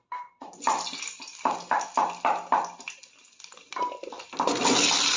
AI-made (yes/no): no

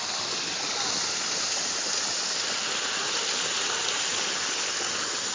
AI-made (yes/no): no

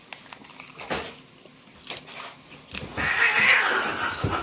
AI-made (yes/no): no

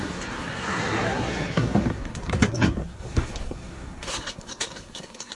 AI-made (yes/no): yes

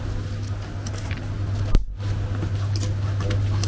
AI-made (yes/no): no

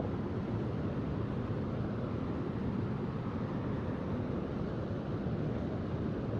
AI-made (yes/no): no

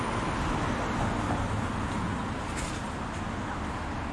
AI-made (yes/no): no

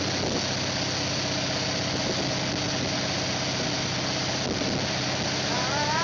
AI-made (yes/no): no